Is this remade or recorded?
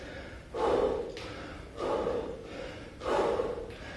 recorded